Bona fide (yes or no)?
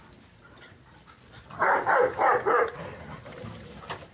yes